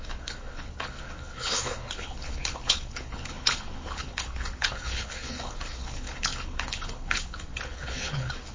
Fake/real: fake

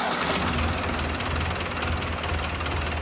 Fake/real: real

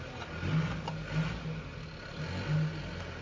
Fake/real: real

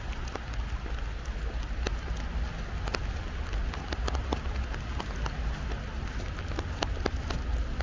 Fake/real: real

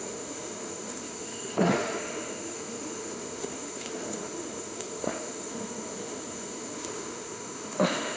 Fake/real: fake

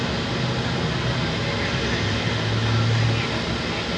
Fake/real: real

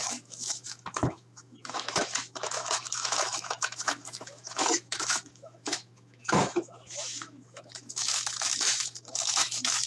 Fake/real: fake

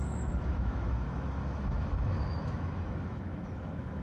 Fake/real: fake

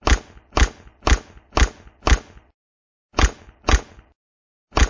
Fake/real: real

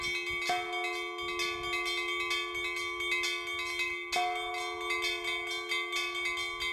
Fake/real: real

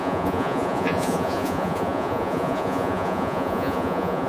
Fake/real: fake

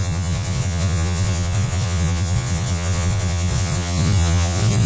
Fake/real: fake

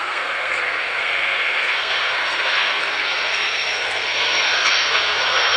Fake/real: fake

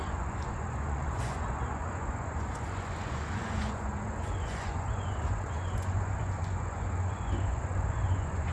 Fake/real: fake